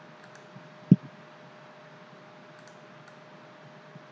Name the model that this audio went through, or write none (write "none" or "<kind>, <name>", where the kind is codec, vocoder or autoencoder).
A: none